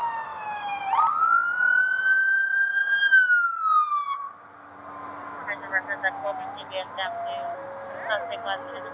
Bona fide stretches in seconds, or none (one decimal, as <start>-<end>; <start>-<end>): 0.8-8.9